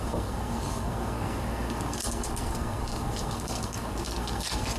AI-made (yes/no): yes